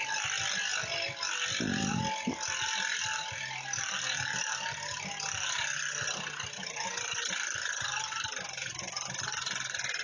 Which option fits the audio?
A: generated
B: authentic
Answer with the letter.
B